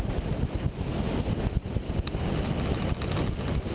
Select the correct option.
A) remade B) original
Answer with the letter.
B